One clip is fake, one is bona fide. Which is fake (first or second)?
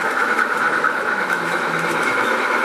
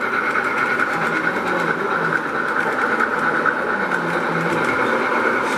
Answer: first